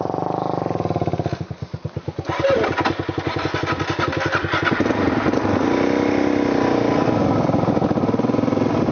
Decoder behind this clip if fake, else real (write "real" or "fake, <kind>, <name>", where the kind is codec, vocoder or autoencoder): real